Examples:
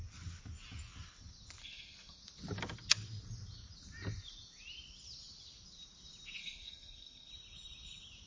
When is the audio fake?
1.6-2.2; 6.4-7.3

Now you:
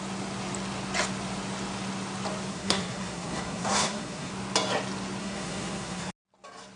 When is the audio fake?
2.5-4.3; 5.2-6.1

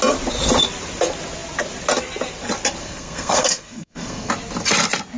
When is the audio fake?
2.8-4.3

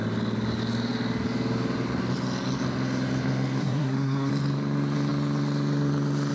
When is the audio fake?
3.6-4.3

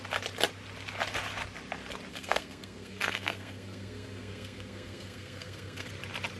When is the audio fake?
2.1-5.9